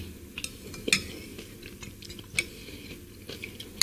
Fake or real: real